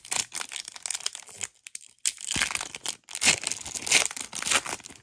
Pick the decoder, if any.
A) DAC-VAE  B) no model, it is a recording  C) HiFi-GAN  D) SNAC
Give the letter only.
B